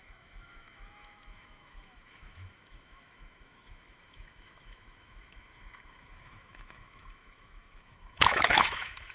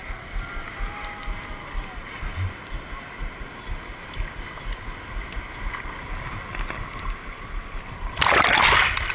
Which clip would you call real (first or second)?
second